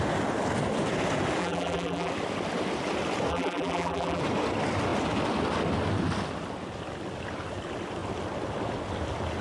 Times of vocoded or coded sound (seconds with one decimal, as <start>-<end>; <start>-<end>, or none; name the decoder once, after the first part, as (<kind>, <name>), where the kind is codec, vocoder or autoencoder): 1.4-2.1 (vocoder, BigVGAN v2); 3.3-4.2